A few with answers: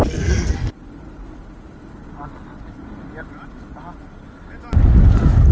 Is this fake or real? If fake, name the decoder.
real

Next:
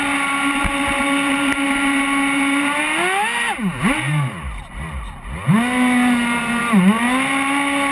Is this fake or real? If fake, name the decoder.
real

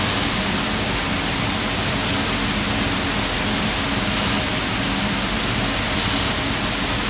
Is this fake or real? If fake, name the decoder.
real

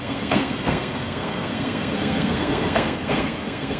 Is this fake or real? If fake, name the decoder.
fake, codec, SNAC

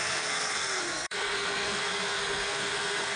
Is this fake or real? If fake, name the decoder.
fake, codec, SNAC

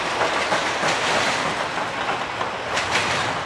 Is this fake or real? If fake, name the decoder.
real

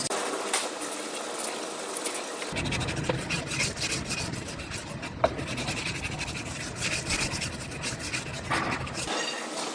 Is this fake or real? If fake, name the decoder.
real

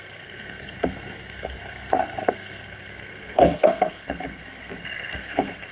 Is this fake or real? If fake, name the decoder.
fake, codec, SNAC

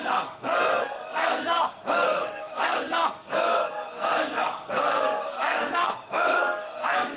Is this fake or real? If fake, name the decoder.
fake, codec, SNAC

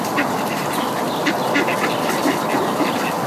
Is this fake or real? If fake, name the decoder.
real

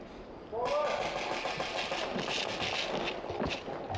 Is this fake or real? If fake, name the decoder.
real